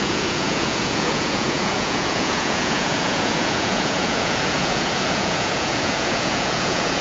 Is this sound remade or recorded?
remade